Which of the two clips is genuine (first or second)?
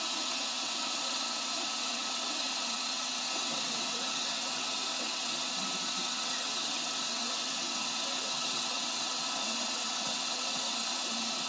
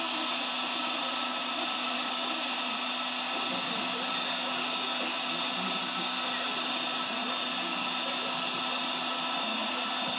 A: second